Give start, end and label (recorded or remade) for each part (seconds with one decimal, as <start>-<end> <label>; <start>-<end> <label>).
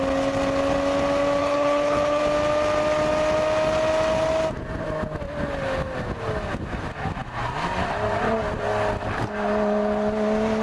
0.0-1.4 recorded; 1.4-2.2 remade; 2.2-10.6 recorded